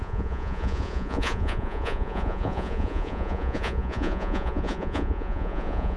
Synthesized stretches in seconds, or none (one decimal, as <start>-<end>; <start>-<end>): 0.0-6.0